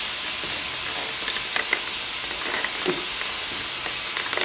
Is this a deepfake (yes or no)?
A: no